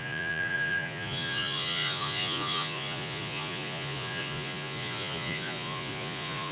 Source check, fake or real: fake